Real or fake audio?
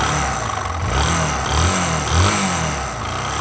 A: real